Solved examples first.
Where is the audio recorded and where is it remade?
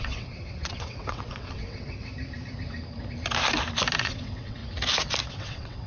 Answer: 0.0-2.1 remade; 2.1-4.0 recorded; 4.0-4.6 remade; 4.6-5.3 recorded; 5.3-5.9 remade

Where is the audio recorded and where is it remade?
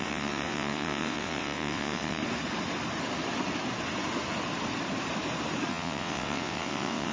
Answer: 0.0-2.2 remade; 2.2-5.7 recorded; 5.7-7.1 remade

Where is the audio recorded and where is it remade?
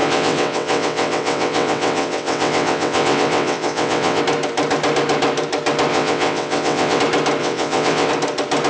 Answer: 0.0-4.2 remade; 4.2-5.9 recorded; 5.9-7.0 remade; 7.0-7.4 recorded; 7.4-8.1 remade; 8.1-8.7 recorded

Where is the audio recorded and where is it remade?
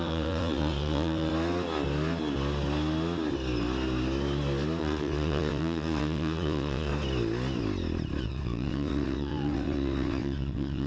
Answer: 0.0-1.3 remade; 1.3-4.8 recorded; 4.8-6.9 remade; 6.9-8.2 recorded; 8.2-10.9 remade